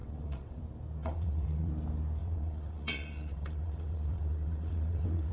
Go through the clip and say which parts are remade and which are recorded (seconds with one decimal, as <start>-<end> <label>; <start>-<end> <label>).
0.0-0.6 remade; 0.6-1.0 recorded; 1.0-1.7 remade; 1.7-2.2 recorded; 2.2-5.3 remade